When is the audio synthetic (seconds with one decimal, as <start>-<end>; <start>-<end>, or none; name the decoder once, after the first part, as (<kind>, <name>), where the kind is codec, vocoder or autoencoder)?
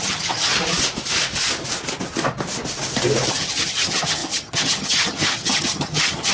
0.0-0.5 (vocoder, HiFi-GAN); 3.3-6.3